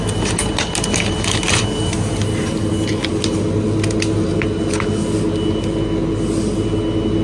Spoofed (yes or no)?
no